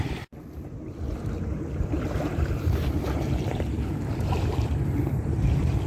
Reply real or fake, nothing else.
fake